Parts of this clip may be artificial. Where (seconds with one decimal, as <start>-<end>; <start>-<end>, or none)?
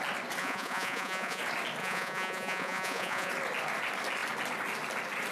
0.4-1.4; 1.8-3.3